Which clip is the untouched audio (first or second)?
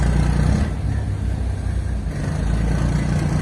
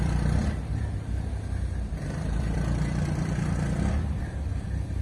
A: first